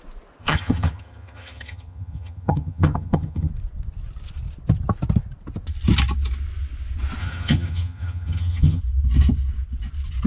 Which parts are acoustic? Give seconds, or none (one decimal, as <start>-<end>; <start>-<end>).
0.0-0.4; 3.5-7.2; 8.8-10.3